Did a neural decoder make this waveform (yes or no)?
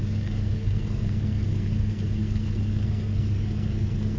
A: yes